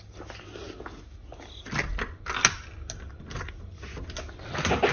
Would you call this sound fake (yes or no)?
no